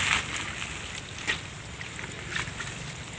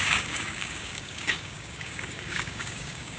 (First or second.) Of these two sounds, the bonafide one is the first